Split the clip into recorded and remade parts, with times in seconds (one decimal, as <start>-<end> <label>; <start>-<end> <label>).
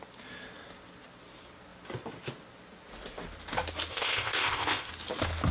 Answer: 0.0-3.9 recorded; 3.9-4.9 remade; 4.9-5.5 recorded